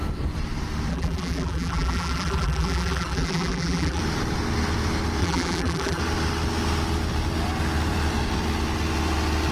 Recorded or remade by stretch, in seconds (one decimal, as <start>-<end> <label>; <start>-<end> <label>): 0.0-0.9 recorded; 0.9-4.0 remade; 4.0-5.2 recorded; 5.2-6.0 remade; 6.0-9.5 recorded

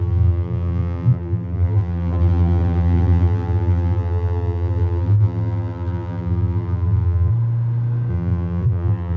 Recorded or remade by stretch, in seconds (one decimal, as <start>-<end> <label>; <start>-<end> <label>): 0.0-7.3 remade; 7.3-8.1 recorded; 8.1-9.2 remade

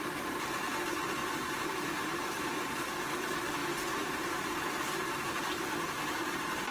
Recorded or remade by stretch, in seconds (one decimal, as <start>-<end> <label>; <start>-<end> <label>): 0.0-1.2 recorded; 1.2-2.5 remade; 2.5-3.6 recorded; 3.6-6.7 remade

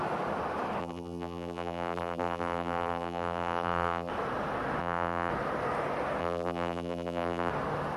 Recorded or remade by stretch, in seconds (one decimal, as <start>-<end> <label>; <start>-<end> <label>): 0.0-0.8 recorded; 0.8-4.1 remade; 4.1-4.8 recorded; 4.8-5.3 remade; 5.3-6.2 recorded; 6.2-7.5 remade; 7.5-8.0 recorded

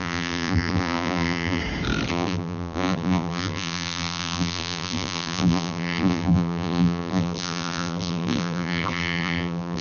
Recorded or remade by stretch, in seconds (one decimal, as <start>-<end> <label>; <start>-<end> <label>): 0.0-1.6 remade; 1.6-2.1 recorded; 2.1-9.8 remade

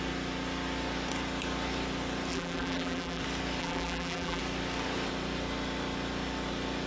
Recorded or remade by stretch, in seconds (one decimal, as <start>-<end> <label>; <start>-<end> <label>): 0.0-2.3 recorded; 2.3-3.2 remade; 3.2-3.6 recorded; 3.6-4.4 remade; 4.4-6.9 recorded

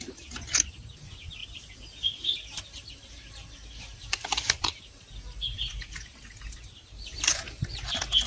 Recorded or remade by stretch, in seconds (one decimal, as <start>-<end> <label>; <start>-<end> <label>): 0.0-1.4 recorded; 1.4-4.8 remade; 4.8-5.7 recorded; 5.7-7.4 remade; 7.4-8.3 recorded